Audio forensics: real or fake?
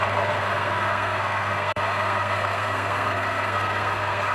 fake